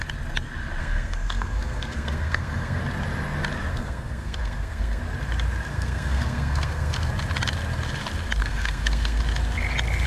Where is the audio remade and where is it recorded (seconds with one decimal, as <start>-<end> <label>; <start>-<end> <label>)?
0.0-0.8 recorded; 0.8-2.8 remade; 2.8-3.7 recorded; 3.7-5.0 remade; 5.0-5.7 recorded; 5.7-7.1 remade; 7.1-8.4 recorded; 8.4-9.2 remade; 9.2-10.1 recorded